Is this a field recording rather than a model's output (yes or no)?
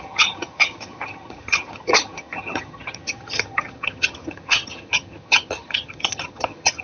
no